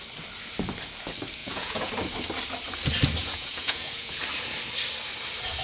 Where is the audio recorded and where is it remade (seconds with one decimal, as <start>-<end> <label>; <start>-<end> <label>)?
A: 0.0-1.4 recorded; 1.4-1.9 remade; 1.9-3.2 recorded; 3.2-4.2 remade; 4.2-5.6 recorded